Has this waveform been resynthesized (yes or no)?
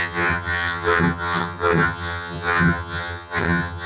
yes